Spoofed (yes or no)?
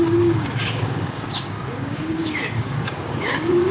yes